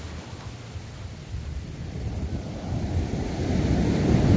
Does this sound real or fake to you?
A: real